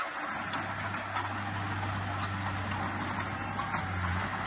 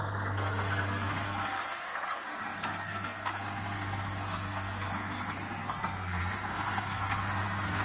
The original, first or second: first